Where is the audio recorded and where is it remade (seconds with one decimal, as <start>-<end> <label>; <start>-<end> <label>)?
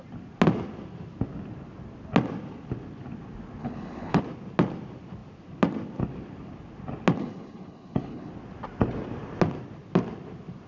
0.0-3.6 recorded; 3.6-4.2 remade; 4.2-7.2 recorded; 7.2-8.3 remade; 8.3-10.7 recorded